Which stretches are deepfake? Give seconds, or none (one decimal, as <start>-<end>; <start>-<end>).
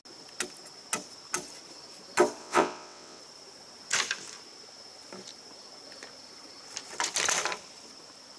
2.4-3.2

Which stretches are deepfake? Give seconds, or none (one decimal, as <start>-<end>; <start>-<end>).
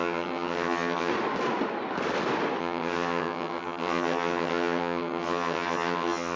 0.0-1.1; 2.6-6.4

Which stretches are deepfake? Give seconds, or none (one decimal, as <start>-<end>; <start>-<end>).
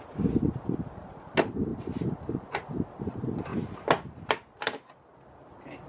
1.7-2.7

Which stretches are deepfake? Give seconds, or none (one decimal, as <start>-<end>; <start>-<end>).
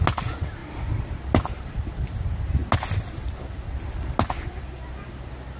none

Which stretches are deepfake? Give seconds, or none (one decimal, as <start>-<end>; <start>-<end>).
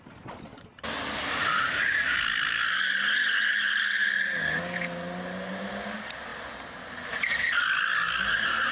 none